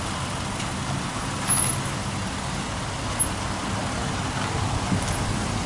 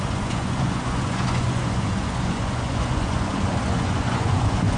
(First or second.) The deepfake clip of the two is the second